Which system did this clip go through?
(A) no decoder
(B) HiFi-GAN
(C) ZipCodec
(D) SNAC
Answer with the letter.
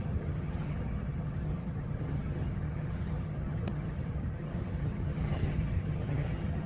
B